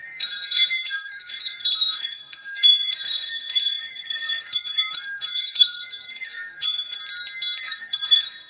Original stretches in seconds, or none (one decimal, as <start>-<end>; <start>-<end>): 7.0-7.6